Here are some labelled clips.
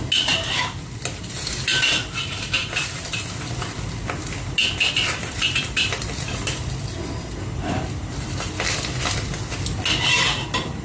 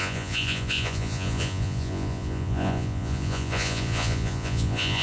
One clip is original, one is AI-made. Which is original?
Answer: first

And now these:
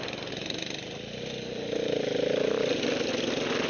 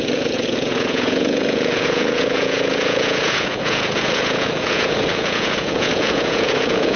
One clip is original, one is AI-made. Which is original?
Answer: first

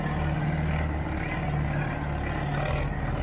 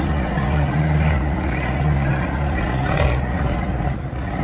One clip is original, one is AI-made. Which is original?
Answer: first